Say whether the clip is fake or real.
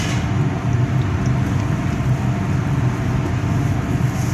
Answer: real